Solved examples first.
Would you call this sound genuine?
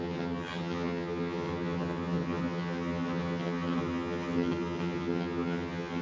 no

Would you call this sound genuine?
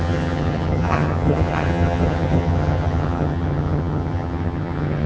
no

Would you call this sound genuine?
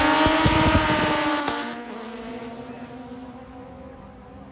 yes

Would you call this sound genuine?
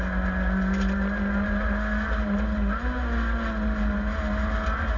yes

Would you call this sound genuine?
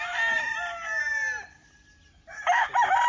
yes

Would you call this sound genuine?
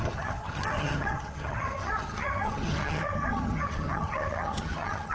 no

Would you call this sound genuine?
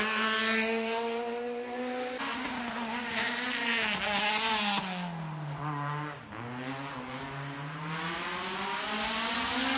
yes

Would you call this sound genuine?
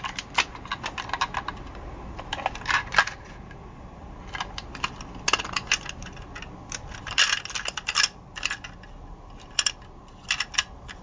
yes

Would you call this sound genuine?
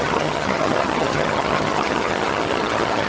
no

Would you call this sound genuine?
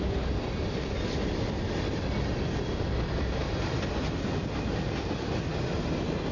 yes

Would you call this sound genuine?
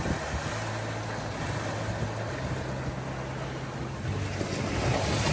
yes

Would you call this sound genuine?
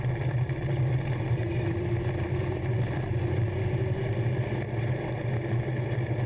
yes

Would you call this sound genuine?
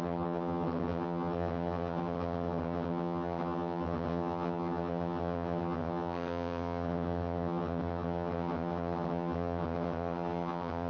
no